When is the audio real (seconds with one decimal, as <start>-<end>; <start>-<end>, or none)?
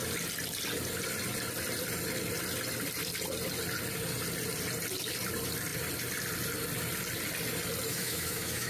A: 0.0-7.9